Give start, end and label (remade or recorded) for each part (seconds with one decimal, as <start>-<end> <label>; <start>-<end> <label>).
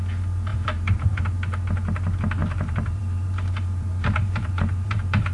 0.0-0.5 recorded; 0.5-1.2 remade; 1.2-2.4 recorded; 2.4-5.3 remade